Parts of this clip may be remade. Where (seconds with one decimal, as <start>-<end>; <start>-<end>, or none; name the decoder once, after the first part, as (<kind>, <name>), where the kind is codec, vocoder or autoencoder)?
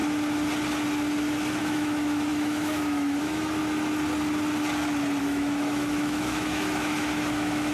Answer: 1.6-3.6 (autoencoder, DAC-VAE); 5.2-7.7